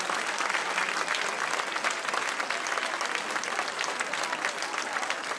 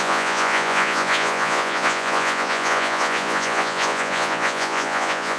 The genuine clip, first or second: first